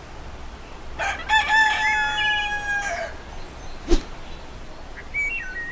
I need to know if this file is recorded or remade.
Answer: recorded